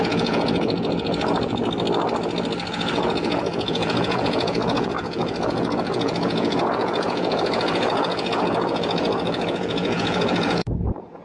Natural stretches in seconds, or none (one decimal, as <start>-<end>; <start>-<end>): 1.6-2.7